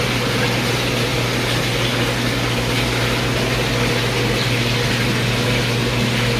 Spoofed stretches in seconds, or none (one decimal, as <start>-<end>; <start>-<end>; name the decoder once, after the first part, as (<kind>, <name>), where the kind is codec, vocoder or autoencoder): none